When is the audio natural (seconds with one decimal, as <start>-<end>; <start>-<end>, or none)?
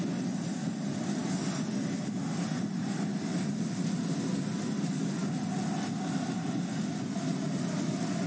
0.0-8.3